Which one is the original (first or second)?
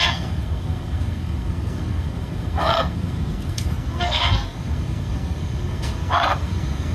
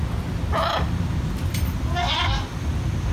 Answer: second